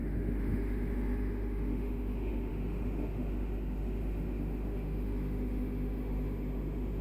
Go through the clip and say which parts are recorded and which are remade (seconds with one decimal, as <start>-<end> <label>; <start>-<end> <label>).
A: 0.0-7.0 remade